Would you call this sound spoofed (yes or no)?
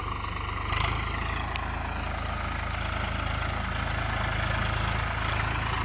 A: no